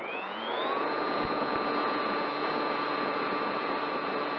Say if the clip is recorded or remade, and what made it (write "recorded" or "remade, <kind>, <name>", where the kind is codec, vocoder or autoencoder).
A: remade, vocoder, Vocos